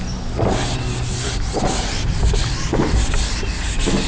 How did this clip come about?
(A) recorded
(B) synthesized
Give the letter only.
A